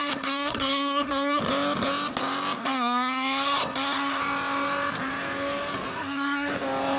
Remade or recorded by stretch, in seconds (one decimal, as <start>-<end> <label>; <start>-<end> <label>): 0.0-1.4 remade; 1.4-2.6 recorded; 2.6-4.2 remade; 4.2-5.9 recorded; 5.9-6.5 remade; 6.5-7.0 recorded